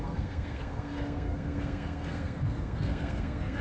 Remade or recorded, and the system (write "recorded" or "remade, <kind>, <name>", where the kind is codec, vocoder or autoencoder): remade, codec, SNAC